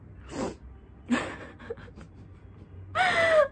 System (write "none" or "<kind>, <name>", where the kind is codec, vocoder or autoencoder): none